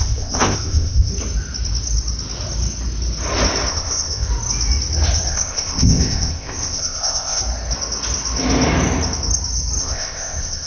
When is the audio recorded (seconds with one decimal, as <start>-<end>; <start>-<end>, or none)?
1.1-3.7; 4.3-5.3; 7.4-9.8